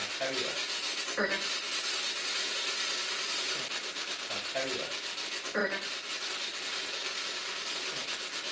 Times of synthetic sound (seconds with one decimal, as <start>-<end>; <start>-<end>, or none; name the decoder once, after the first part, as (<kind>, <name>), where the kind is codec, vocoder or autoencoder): 3.8-4.4 (codec, DAC)